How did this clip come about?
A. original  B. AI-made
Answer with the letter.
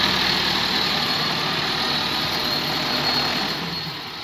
A